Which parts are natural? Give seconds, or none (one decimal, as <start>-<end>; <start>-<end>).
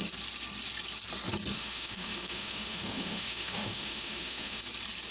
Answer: 0.0-1.5; 4.6-5.1